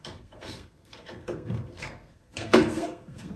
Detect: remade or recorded remade